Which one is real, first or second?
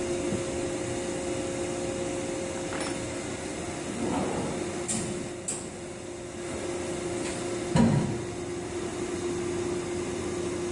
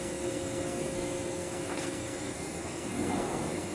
first